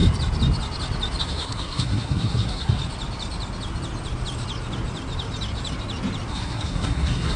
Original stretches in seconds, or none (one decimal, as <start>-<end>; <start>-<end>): 0.0-1.2; 2.8-6.3